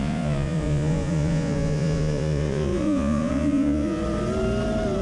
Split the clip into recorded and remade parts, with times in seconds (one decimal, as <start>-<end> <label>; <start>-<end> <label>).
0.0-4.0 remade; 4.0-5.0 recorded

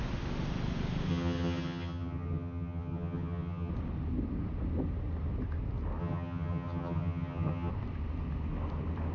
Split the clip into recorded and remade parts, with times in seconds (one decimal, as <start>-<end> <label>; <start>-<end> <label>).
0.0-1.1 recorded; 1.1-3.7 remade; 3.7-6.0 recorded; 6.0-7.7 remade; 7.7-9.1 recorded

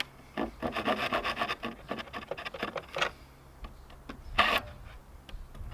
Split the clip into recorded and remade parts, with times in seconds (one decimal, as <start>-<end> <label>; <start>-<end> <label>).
0.0-5.7 recorded

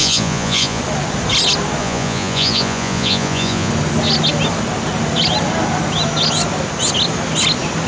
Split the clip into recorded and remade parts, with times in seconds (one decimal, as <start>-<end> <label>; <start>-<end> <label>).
0.0-0.8 remade; 0.8-1.8 recorded; 1.8-3.7 remade; 3.7-7.9 recorded

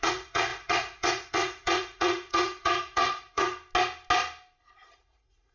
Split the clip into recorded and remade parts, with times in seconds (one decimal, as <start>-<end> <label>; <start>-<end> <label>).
0.0-3.5 remade; 3.5-4.9 recorded; 4.9-5.5 remade

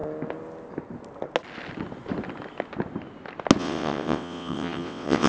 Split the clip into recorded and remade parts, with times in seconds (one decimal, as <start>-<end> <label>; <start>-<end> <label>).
0.0-3.6 recorded; 3.6-5.3 remade